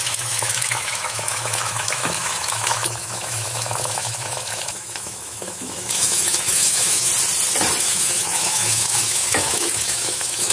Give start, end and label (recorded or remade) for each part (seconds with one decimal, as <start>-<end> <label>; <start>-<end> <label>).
0.0-7.1 remade; 7.1-7.8 recorded; 7.8-10.5 remade